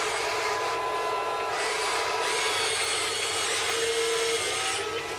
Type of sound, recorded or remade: recorded